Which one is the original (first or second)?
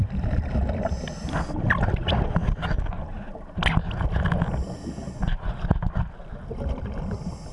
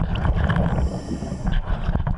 first